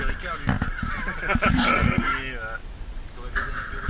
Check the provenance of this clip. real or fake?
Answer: real